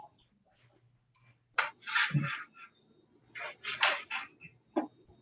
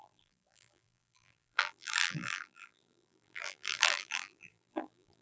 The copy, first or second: second